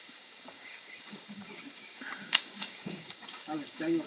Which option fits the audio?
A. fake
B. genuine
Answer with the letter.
A